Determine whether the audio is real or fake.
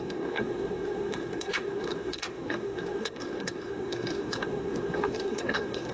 fake